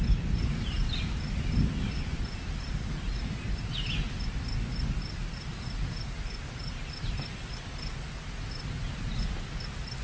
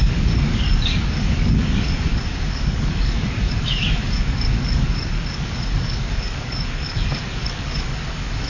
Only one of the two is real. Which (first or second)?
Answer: first